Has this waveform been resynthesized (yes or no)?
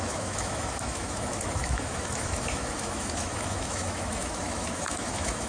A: yes